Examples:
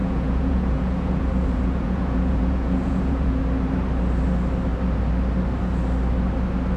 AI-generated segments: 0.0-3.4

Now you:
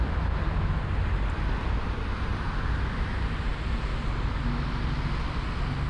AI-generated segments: none

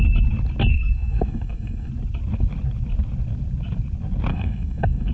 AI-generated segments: 0.7-1.9; 4.3-5.1